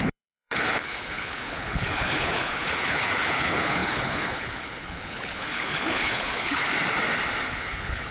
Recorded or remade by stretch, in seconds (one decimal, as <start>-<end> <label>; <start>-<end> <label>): 0.0-6.6 remade; 6.6-7.5 recorded; 7.5-8.1 remade